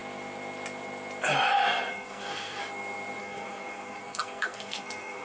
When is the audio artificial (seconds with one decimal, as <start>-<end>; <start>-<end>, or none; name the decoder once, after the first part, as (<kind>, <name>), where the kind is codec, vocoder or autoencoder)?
1.9-2.6 (codec, SNAC); 3.2-5.2

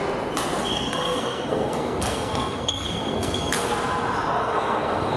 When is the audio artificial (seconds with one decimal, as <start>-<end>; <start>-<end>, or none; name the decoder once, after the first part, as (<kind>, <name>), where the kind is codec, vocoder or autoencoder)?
0.6-3.7 (codec, SNAC); 4.4-5.2

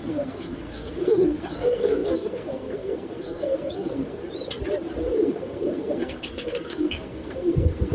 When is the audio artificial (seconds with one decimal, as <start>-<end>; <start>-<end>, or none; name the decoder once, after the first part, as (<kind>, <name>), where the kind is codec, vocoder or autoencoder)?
0.0-4.2 (codec, SNAC); 5.1-7.9

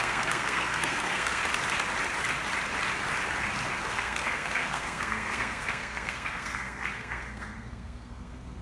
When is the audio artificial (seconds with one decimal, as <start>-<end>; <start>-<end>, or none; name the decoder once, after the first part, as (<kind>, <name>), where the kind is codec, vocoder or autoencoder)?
0.0-1.4 (codec, SNAC); 3.8-8.6

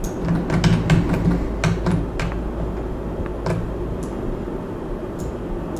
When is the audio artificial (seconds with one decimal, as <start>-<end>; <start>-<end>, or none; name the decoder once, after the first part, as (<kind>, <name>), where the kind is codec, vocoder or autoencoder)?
none

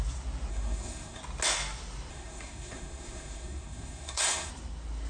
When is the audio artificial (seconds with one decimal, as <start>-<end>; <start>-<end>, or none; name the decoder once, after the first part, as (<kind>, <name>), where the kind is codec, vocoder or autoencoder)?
0.5-1.2 (codec, SNAC); 2.1-4.5

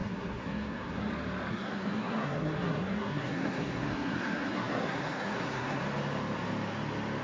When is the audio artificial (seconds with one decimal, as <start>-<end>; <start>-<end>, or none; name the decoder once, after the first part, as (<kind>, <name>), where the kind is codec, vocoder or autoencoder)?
0.0-1.1 (codec, SNAC); 1.5-5.8

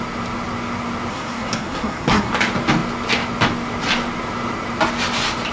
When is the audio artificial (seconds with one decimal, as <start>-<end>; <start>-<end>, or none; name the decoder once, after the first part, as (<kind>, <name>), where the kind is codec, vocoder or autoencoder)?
1.1-2.3 (codec, SNAC)